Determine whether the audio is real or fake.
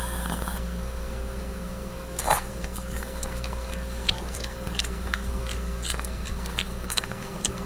fake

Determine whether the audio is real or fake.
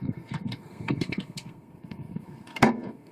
fake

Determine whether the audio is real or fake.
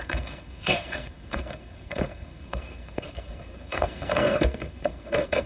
fake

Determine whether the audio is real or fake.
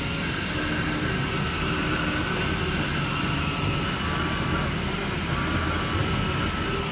real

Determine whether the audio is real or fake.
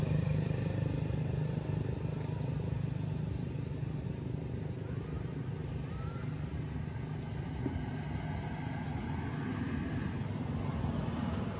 real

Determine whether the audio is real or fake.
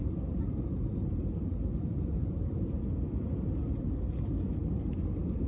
real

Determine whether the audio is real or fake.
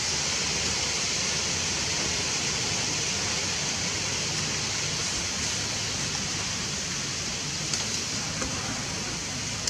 real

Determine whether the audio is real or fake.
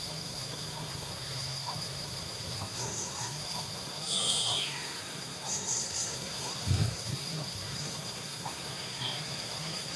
fake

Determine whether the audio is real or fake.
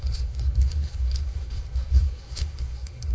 fake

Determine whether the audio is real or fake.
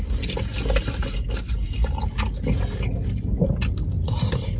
real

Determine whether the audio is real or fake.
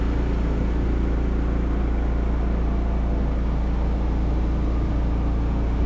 real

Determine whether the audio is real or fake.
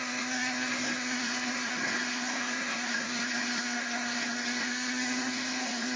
fake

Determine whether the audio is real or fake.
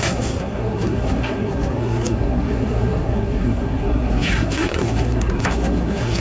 fake